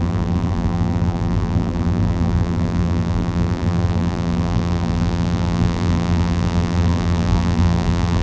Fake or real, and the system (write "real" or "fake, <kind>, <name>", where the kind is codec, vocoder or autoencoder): fake, vocoder, BigVGAN v2